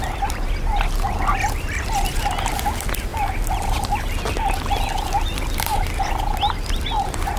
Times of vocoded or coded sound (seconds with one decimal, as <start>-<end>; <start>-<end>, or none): 3.1-4.6